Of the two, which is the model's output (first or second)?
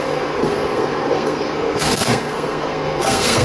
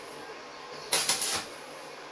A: first